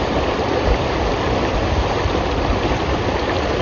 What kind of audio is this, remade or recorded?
recorded